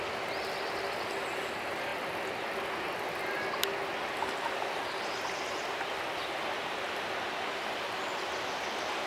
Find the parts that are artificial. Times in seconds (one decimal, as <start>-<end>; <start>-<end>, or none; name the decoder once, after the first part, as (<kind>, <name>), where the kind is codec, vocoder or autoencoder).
none